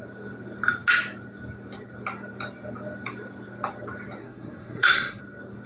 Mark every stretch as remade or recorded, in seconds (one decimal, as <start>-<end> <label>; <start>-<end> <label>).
0.0-4.2 recorded; 4.2-5.2 remade; 5.2-5.7 recorded